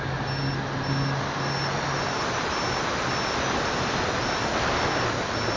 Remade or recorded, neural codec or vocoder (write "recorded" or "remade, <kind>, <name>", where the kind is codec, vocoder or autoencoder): recorded